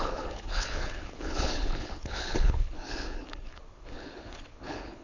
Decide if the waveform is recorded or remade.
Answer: remade